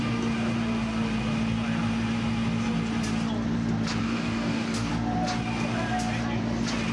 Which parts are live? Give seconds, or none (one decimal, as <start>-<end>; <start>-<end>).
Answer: 0.0-4.0; 4.9-6.9